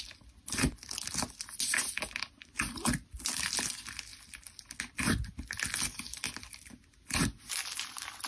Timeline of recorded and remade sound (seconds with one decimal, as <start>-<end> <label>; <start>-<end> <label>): 0.0-8.3 recorded